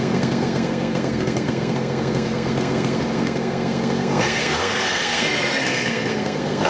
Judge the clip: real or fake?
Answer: fake